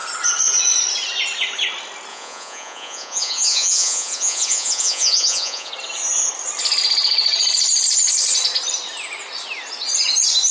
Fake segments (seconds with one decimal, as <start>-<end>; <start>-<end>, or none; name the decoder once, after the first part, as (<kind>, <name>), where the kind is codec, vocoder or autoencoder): 2.1-5.7 (vocoder, Vocos)